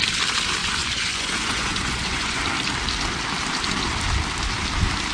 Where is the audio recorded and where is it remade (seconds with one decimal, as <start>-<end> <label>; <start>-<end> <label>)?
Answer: 0.0-0.6 recorded; 0.6-2.4 remade; 2.4-5.1 recorded